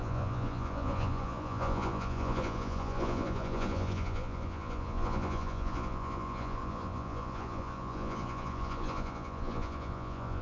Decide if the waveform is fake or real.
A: fake